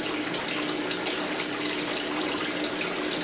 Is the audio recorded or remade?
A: recorded